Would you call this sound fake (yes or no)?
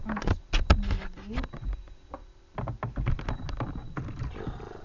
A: no